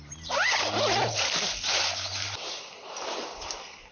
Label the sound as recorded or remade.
recorded